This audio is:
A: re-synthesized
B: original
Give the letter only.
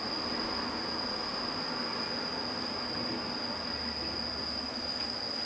B